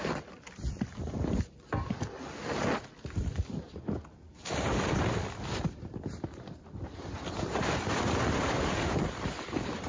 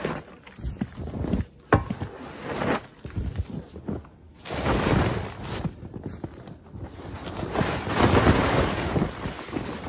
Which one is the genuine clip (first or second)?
second